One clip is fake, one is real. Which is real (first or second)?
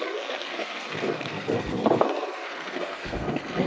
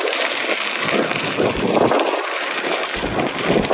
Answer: second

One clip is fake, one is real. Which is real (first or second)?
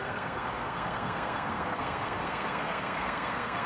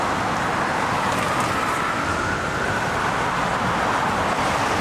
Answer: second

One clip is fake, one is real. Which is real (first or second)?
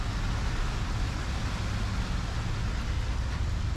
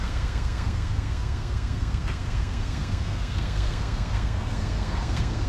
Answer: first